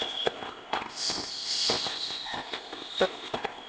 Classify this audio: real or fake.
fake